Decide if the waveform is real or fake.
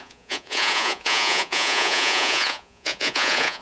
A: fake